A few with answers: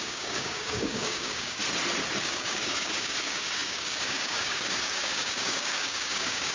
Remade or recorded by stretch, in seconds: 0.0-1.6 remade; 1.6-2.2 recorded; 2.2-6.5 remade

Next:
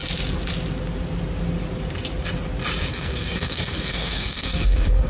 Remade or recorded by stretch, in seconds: 0.0-2.9 recorded; 2.9-5.1 remade

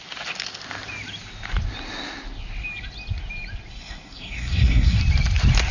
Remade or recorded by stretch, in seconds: 0.0-3.7 recorded; 3.7-5.0 remade; 5.0-5.7 recorded

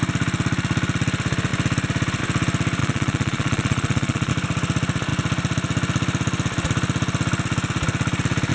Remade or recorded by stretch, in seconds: 0.0-2.8 recorded; 2.8-4.3 remade; 4.3-8.5 recorded

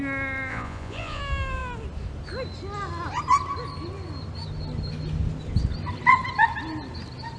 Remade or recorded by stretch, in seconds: 0.0-0.5 recorded; 0.5-1.2 remade; 1.2-7.4 recorded